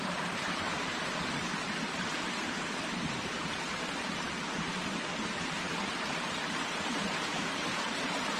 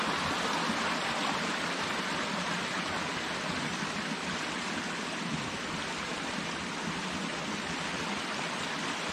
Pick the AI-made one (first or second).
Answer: first